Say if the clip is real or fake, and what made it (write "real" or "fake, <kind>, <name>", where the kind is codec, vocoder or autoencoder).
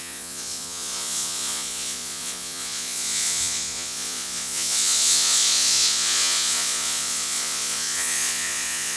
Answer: fake, vocoder, Vocos